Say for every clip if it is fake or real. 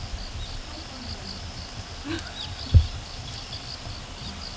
real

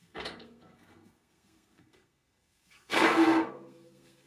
fake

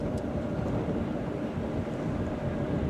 real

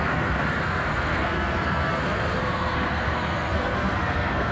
fake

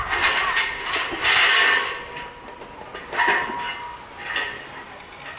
real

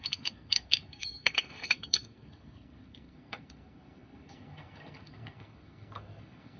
fake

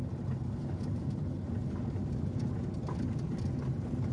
real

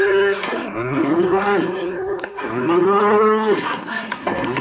fake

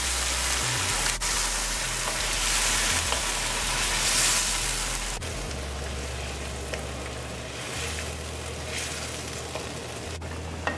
real